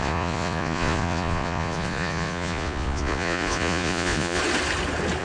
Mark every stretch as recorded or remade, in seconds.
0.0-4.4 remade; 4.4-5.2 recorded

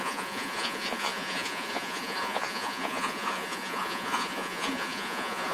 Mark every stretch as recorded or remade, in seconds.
0.0-5.5 remade

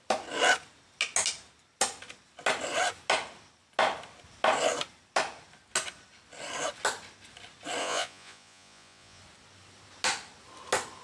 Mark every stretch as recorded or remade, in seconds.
0.0-7.8 recorded; 7.8-9.2 remade; 9.2-11.0 recorded

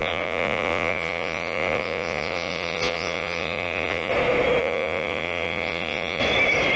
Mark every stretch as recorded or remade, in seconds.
0.0-4.1 remade; 4.1-4.6 recorded; 4.6-6.2 remade; 6.2-6.8 recorded

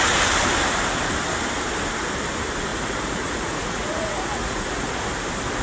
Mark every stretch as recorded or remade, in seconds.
0.0-2.7 recorded; 2.7-4.9 remade; 4.9-5.6 recorded